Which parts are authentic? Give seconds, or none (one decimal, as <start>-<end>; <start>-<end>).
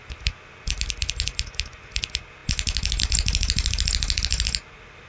0.0-5.1